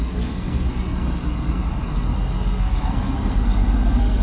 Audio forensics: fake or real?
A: fake